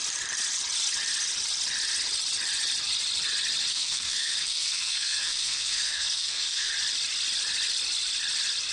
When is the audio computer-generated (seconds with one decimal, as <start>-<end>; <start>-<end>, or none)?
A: 3.7-6.7